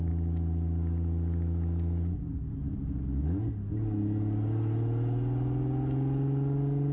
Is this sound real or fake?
real